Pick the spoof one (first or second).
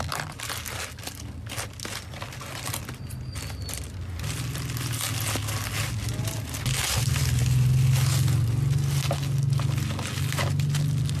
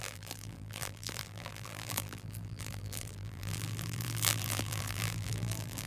second